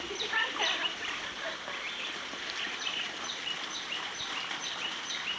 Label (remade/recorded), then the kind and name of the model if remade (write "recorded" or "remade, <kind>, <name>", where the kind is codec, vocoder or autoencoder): recorded